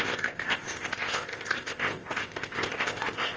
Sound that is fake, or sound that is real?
fake